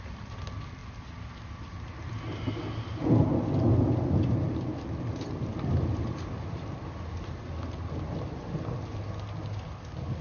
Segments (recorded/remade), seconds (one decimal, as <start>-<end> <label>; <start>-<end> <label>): 0.0-10.2 recorded